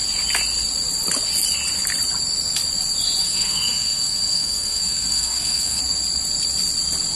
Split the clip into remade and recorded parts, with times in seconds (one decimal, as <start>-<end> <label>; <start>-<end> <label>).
0.0-3.2 recorded; 3.2-5.8 remade; 5.8-7.2 recorded